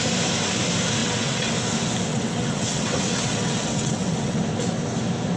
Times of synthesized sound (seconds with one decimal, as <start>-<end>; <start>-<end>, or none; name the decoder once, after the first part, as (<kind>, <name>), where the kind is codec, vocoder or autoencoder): 1.0-1.5 (vocoder, WaveNeXt); 2.1-4.4